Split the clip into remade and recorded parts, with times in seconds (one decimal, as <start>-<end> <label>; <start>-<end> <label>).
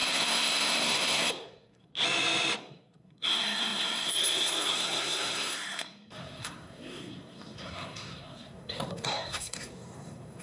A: 0.0-1.9 remade; 1.9-2.6 recorded; 2.6-10.4 remade